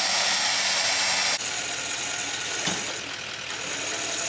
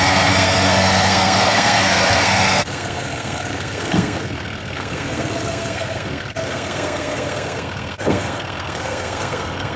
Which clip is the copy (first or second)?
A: second